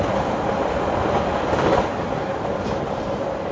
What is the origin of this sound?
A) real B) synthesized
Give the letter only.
A